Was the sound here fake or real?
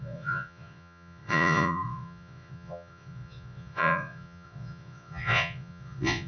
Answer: fake